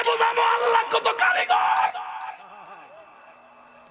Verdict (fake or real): real